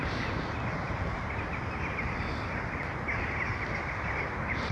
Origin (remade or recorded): recorded